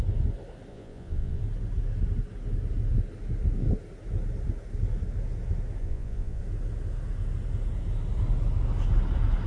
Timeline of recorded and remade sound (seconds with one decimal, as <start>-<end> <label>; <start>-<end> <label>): 0.0-0.7 recorded; 0.7-1.4 remade; 1.4-5.8 recorded; 5.8-6.4 remade; 6.4-9.5 recorded